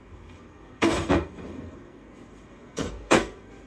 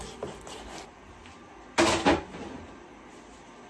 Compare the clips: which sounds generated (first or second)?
first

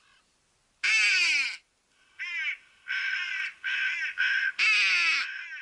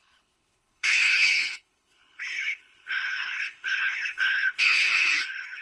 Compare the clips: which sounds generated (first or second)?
second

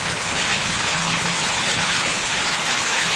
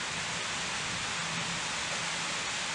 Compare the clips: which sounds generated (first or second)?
first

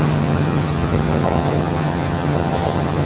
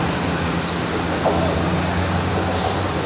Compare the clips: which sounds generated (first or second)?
first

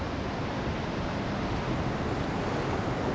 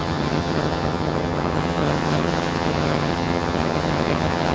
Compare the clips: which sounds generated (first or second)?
second